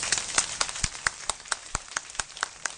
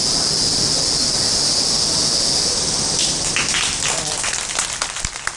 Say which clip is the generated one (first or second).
first